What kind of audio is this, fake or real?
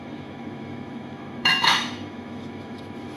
fake